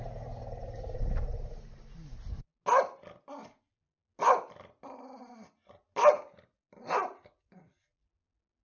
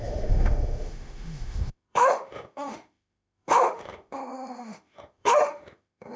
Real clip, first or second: first